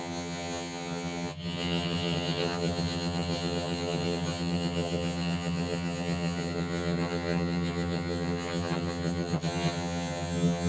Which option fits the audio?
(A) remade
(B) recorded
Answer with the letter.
A